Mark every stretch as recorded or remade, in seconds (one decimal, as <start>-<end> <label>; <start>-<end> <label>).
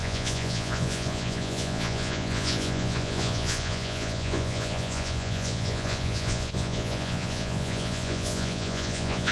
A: 0.0-9.3 remade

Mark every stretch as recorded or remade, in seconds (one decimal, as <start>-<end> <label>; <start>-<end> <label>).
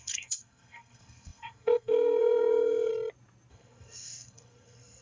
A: 0.0-2.9 remade; 2.9-3.5 recorded; 3.5-5.0 remade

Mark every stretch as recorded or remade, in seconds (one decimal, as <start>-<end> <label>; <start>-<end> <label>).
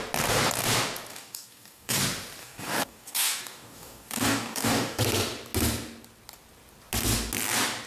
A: 0.0-1.1 recorded; 1.1-2.0 remade; 2.0-2.4 recorded; 2.4-5.0 remade; 5.0-7.9 recorded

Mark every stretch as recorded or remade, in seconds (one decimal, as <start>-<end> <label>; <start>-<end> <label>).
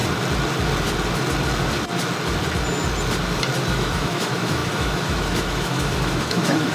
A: 0.0-3.7 recorded; 3.7-6.7 remade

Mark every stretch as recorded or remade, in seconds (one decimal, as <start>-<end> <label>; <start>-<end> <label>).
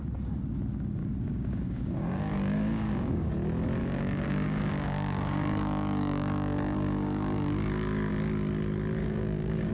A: 0.0-1.0 recorded; 1.0-3.3 remade; 3.3-3.8 recorded; 3.8-8.1 remade; 8.1-9.0 recorded; 9.0-9.7 remade